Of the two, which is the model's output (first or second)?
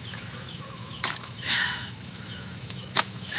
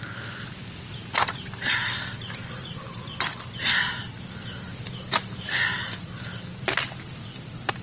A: first